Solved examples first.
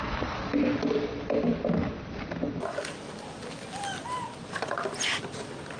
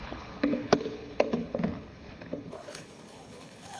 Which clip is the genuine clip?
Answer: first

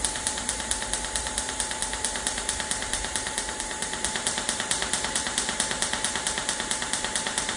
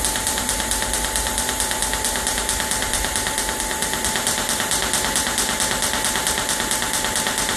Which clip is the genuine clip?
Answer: second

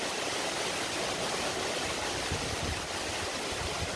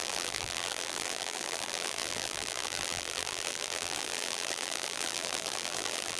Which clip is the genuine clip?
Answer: first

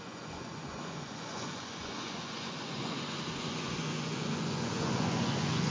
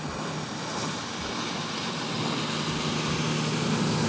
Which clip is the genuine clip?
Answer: second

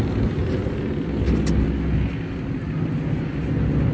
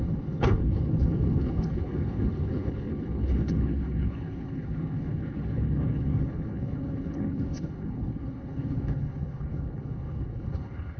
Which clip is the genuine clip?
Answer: first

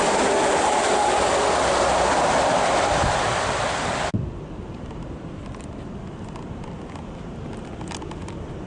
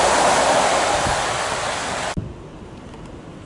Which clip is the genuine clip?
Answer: second